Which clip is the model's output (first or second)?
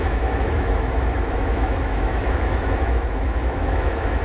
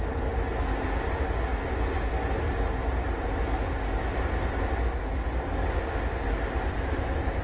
first